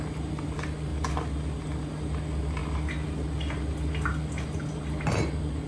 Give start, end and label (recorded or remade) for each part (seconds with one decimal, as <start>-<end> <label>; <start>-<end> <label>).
0.0-5.7 recorded